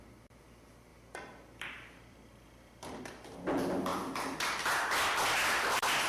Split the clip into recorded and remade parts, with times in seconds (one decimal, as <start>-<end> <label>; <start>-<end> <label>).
0.0-0.9 recorded; 0.9-3.0 remade; 3.0-3.9 recorded; 3.9-6.1 remade